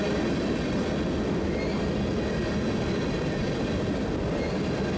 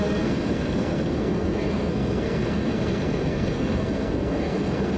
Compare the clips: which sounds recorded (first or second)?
first